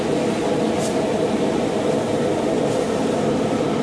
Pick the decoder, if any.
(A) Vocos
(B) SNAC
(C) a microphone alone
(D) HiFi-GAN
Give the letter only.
C